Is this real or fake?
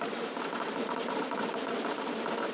real